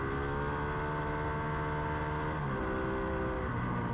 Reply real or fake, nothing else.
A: real